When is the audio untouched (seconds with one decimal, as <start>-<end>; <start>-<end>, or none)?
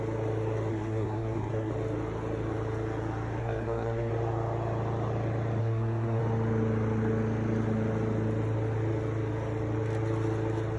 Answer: 0.0-0.7; 1.7-3.4; 4.1-5.6; 6.2-10.8